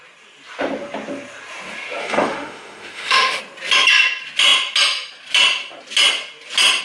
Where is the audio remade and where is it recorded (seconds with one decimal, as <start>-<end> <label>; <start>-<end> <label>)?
0.0-2.0 recorded; 2.0-3.4 remade; 3.4-6.8 recorded